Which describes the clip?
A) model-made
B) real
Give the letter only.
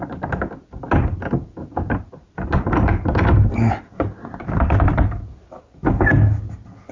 B